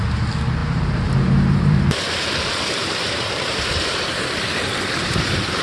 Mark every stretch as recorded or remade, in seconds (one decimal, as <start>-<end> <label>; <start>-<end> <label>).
0.0-0.6 recorded; 0.6-2.3 remade; 2.3-2.8 recorded; 2.8-4.4 remade; 4.4-5.0 recorded; 5.0-5.6 remade